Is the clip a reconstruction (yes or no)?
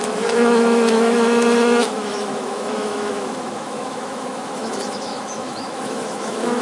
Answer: yes